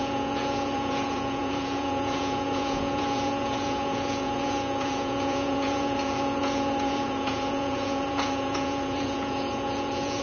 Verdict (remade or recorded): remade